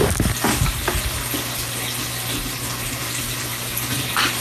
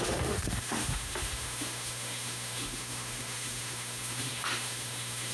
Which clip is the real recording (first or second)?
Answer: first